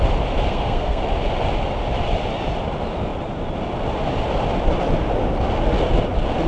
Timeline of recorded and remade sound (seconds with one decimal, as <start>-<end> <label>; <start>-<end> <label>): 0.0-0.5 recorded; 0.5-1.0 remade; 1.0-6.5 recorded